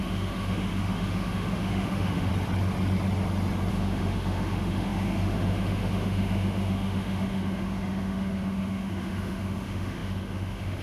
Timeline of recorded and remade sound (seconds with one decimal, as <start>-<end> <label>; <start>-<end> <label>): 0.0-2.3 remade; 2.3-3.7 recorded; 3.7-10.8 remade